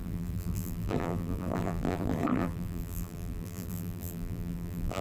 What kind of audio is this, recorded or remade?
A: remade